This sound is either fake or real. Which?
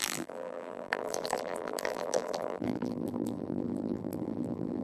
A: fake